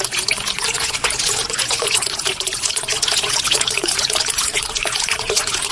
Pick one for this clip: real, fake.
fake